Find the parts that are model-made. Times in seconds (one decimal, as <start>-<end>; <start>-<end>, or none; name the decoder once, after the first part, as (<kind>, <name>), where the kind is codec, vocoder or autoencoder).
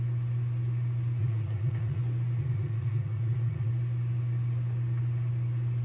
1.2-2.0 (vocoder, Vocos); 2.4-3.7